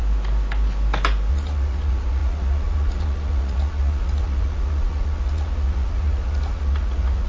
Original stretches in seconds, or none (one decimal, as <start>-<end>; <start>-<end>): 0.0-1.3